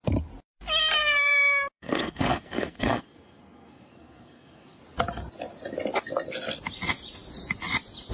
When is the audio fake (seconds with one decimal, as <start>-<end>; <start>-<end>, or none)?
1.0-4.8